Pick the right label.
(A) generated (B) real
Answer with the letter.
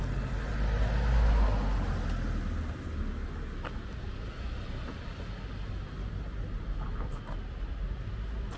B